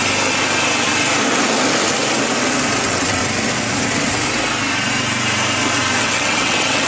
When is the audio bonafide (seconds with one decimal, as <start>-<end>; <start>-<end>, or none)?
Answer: 0.0-2.8; 3.2-6.0